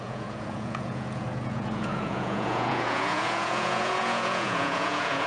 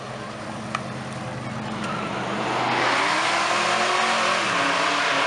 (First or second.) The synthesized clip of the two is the first